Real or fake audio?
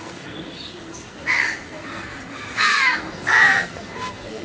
fake